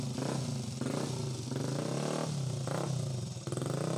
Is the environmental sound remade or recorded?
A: recorded